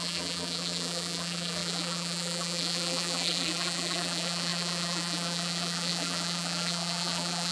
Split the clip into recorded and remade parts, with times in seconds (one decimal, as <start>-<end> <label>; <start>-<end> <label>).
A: 0.0-7.5 remade

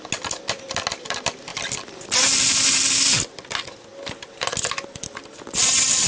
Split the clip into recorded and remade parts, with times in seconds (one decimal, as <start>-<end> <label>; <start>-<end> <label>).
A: 0.0-6.1 recorded

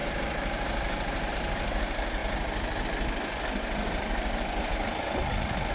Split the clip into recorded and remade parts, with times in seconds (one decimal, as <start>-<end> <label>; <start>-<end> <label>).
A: 0.0-2.2 remade; 2.2-5.7 recorded

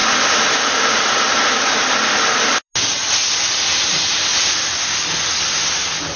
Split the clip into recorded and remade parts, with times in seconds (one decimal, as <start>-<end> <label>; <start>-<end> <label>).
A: 0.0-3.7 recorded; 3.7-4.3 remade; 4.3-6.2 recorded

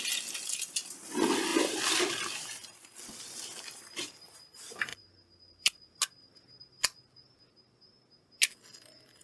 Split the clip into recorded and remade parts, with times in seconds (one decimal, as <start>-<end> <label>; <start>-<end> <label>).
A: 0.0-4.9 recorded; 4.9-5.8 remade; 5.8-9.2 recorded

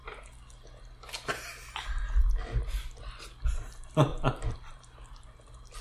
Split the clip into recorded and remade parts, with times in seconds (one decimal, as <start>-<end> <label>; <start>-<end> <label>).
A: 0.0-4.1 recorded; 4.1-5.8 remade